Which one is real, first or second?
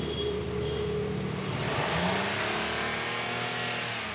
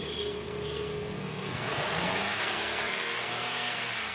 first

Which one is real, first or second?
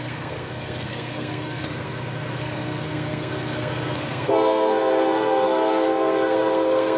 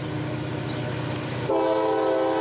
second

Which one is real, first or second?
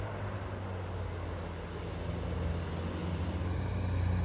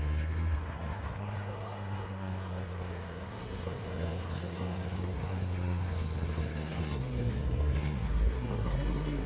first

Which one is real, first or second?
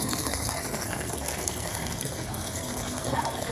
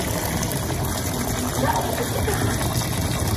second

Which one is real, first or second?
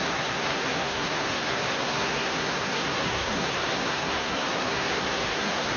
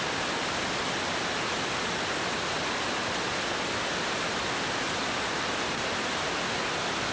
second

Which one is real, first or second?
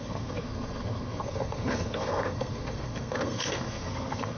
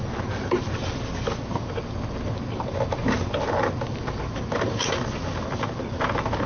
second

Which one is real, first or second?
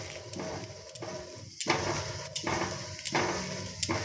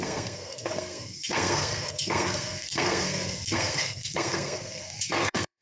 first